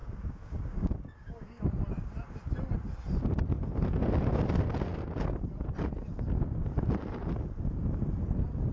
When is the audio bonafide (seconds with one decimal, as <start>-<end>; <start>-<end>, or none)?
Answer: 1.6-8.7